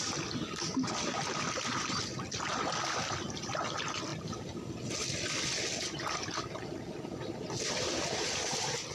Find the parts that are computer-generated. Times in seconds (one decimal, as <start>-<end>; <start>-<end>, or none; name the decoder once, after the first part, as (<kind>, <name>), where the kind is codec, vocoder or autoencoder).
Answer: none